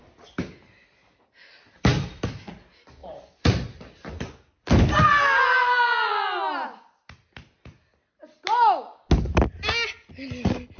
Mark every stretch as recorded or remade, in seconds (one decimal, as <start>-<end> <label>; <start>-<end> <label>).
0.0-10.8 recorded